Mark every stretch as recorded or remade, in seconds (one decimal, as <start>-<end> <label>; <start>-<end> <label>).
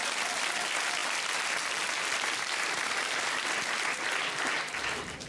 0.0-5.3 recorded